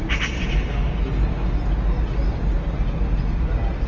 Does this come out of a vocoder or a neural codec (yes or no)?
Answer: no